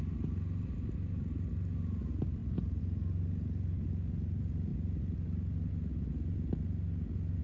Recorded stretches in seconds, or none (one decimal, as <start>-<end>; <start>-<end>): 0.0-7.4